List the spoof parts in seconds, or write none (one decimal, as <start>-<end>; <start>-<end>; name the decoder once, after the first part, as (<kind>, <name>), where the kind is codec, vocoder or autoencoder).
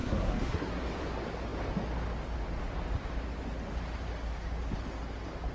0.0-0.8 (codec, SNAC)